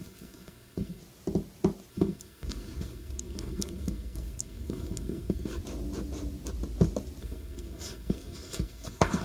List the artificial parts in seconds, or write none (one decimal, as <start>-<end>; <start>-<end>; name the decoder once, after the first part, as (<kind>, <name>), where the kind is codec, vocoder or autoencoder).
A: 0.0-1.0 (codec, SNAC); 1.9-5.6; 7.2-9.2